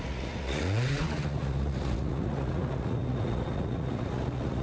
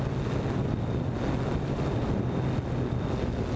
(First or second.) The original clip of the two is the second